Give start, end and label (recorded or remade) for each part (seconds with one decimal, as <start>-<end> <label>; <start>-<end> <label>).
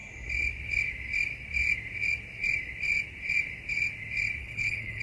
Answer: 0.0-4.4 recorded; 4.4-5.0 remade